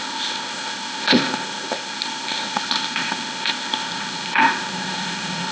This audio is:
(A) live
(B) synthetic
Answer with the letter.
B